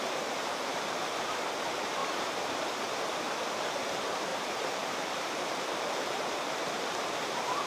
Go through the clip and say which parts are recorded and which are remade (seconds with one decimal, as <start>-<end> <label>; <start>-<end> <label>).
0.0-2.0 remade; 2.0-3.6 recorded; 3.6-7.7 remade